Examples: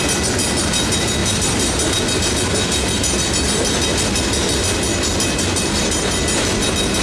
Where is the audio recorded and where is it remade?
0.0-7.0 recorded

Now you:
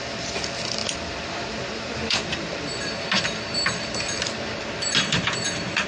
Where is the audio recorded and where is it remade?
0.0-5.9 remade

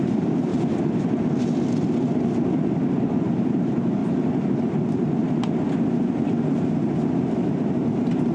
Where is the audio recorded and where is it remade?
0.0-0.5 remade; 0.5-3.1 recorded; 3.1-4.0 remade; 4.0-4.6 recorded; 4.6-5.2 remade; 5.2-7.2 recorded; 7.2-8.3 remade

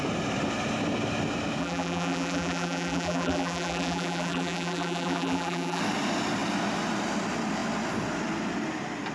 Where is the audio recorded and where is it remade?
0.0-1.6 recorded; 1.6-5.8 remade; 5.8-9.1 recorded

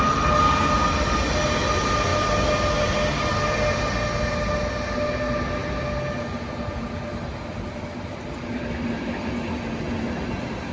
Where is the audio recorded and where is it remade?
0.0-10.7 recorded

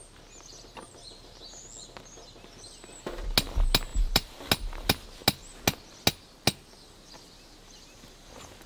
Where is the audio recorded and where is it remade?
0.0-0.5 recorded; 0.5-1.6 remade; 1.6-3.9 recorded; 3.9-4.5 remade; 4.5-8.7 recorded

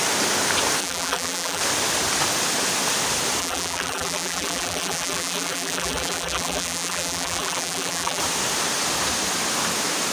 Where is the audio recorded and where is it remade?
0.0-0.8 recorded; 0.8-1.6 remade; 1.6-3.4 recorded; 3.4-8.2 remade; 8.2-10.1 recorded